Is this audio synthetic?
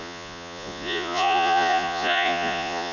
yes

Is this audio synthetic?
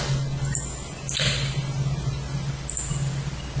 no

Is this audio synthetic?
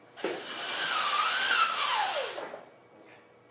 no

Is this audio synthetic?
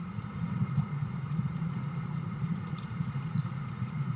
yes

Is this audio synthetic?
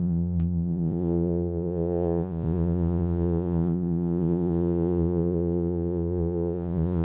yes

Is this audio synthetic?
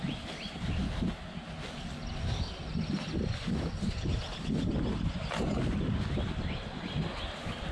no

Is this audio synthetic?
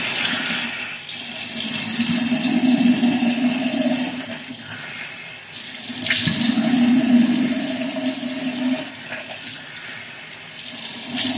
no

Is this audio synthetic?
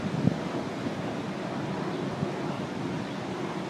no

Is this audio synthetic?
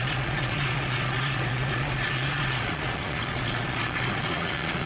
yes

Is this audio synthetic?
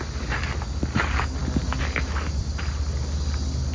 no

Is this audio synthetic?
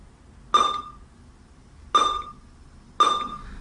no